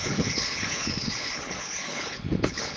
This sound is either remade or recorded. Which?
remade